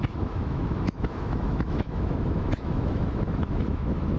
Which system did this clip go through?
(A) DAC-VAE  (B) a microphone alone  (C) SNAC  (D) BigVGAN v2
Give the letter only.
A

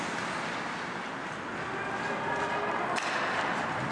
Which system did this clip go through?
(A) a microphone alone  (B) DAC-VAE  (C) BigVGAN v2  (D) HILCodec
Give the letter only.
A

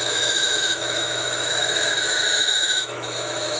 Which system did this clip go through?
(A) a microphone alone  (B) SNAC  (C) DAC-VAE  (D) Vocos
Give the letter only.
C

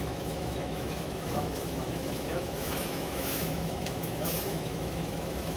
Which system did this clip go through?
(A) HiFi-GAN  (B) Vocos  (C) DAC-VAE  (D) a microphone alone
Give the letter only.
C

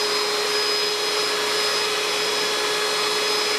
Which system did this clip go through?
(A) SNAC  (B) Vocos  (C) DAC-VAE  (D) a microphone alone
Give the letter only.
D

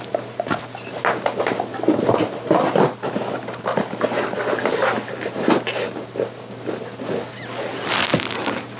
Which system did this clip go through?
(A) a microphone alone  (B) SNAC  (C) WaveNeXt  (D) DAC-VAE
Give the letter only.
A